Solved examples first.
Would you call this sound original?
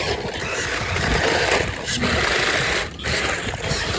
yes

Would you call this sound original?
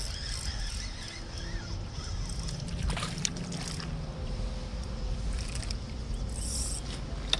yes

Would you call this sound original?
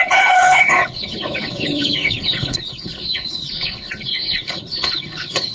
no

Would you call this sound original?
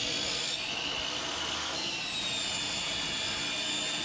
yes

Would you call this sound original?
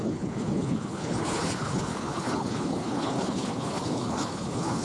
no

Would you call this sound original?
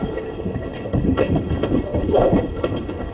no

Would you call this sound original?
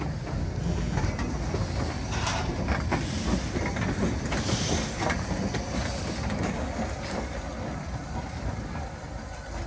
yes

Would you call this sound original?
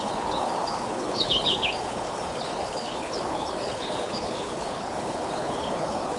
no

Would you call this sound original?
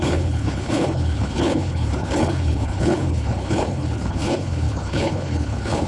no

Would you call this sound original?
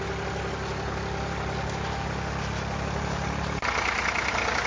yes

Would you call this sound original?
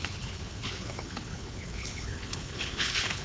no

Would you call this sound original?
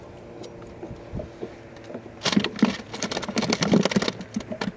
yes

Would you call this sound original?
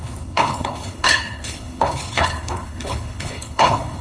no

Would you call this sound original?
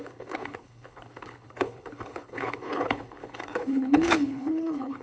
no